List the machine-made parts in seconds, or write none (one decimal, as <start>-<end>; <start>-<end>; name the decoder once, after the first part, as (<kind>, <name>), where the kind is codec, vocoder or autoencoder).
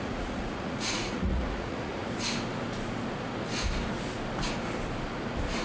0.0-2.0 (vocoder, Vocos)